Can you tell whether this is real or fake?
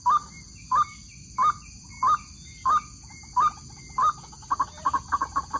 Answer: real